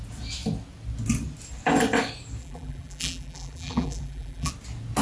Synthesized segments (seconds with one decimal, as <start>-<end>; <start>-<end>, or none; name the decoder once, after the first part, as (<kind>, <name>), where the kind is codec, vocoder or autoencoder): 2.4-4.5 (vocoder, BigVGAN v2)